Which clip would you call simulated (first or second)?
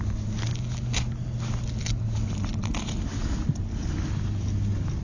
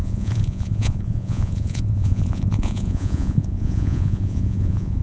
second